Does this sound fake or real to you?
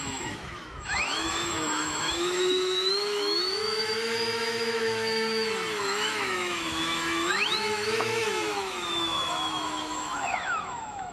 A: fake